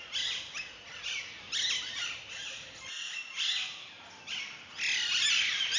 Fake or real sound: real